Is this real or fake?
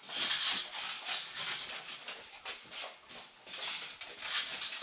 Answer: real